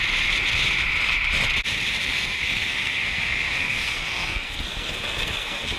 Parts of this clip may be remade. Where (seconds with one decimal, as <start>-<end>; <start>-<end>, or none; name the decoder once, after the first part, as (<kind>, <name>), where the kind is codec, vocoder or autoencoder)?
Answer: 2.0-5.8 (codec, SNAC)